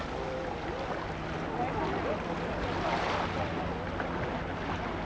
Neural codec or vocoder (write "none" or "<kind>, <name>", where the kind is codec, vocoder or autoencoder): none